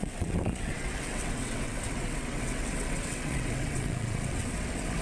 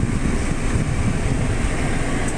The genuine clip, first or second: second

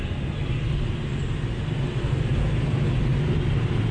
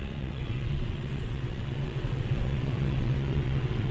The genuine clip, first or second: first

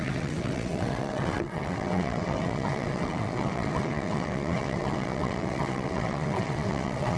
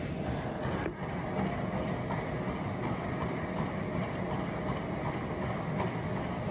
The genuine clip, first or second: second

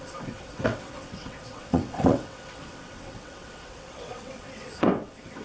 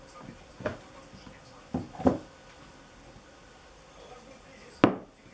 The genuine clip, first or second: second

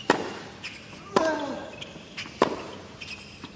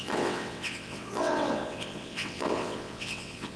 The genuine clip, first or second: first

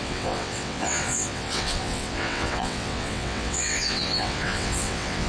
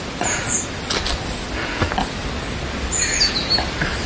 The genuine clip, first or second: second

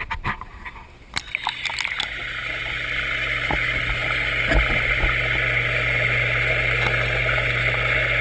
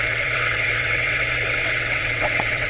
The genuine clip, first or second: first